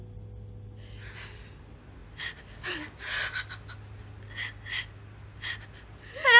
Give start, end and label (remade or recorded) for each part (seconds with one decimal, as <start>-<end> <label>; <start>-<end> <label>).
0.0-6.4 recorded